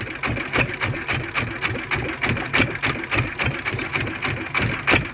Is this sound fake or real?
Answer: real